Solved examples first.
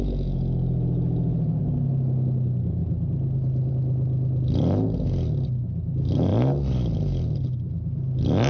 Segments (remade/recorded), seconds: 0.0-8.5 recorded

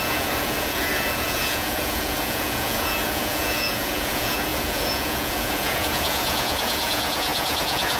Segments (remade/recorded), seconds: 0.0-8.0 remade